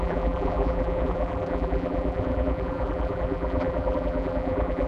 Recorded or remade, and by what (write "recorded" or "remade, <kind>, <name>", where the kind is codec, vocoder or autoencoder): remade, vocoder, BigVGAN v2